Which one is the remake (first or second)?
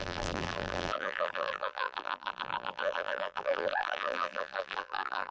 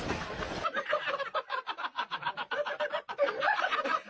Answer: first